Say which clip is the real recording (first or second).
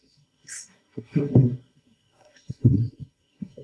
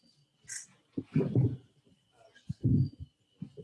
second